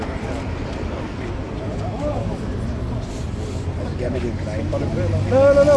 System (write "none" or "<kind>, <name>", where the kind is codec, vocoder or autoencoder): none